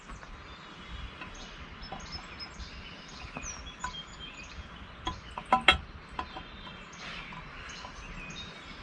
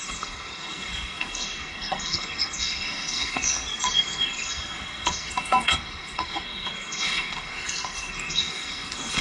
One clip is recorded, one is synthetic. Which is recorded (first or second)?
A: first